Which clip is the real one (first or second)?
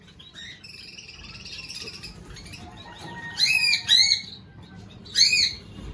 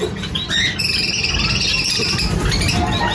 second